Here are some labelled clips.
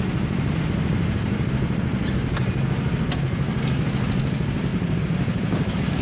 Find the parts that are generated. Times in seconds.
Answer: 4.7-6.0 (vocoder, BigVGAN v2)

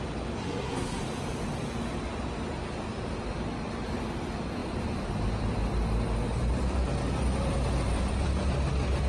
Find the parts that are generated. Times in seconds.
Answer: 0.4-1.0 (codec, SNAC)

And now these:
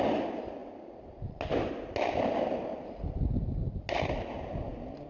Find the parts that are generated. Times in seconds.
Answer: none

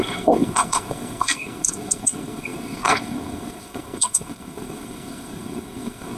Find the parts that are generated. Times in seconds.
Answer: 0.0-6.2 (codec, SNAC)

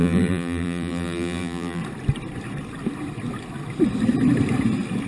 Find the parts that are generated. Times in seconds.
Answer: 0.0-1.8 (vocoder, BigVGAN v2)

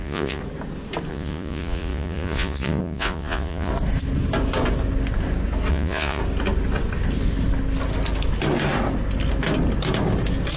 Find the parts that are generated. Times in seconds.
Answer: 0.0-0.4 (vocoder, Vocos); 1.1-3.7; 5.7-6.2